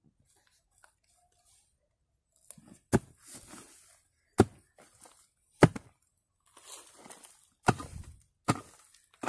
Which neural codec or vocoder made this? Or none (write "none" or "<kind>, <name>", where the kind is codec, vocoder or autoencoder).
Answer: none